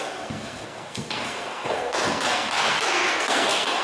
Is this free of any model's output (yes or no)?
no